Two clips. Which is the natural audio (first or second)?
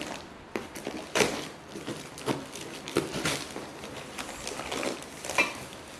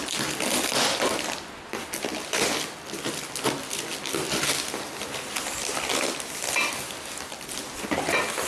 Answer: second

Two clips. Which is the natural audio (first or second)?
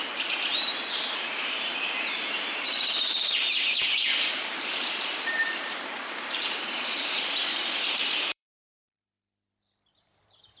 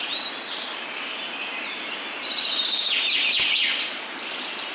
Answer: second